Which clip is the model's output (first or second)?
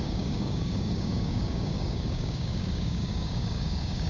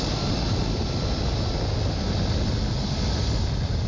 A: first